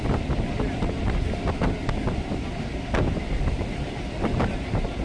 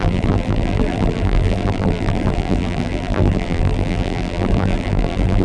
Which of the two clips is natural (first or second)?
first